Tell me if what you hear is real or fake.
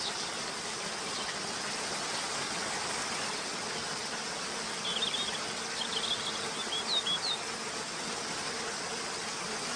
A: real